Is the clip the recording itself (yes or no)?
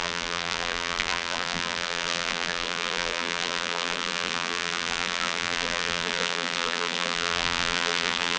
no